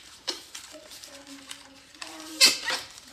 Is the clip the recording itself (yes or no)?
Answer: no